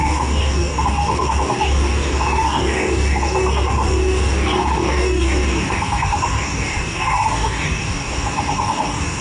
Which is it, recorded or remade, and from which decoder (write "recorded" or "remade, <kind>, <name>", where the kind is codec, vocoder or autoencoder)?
remade, codec, DAC